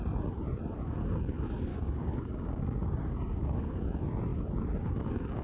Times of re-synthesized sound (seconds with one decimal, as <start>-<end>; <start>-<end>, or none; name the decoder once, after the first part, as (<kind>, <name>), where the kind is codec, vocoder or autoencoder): 1.7-3.7 (codec, DAC)